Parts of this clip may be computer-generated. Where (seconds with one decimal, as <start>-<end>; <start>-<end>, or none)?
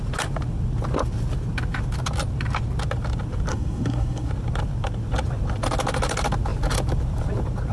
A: 3.5-4.3